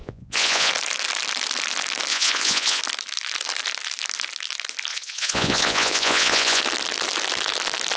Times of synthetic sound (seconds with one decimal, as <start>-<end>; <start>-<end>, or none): 0.0-0.7; 2.1-2.8; 4.9-6.6